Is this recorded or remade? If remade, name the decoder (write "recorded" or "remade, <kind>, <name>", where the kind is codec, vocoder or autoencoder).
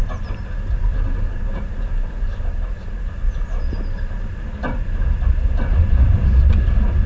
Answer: recorded